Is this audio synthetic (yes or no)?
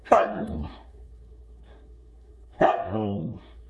yes